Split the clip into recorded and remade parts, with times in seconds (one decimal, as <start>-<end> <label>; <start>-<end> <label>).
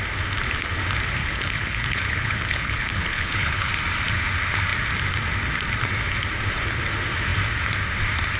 0.0-1.2 recorded; 1.2-3.7 remade; 3.7-8.4 recorded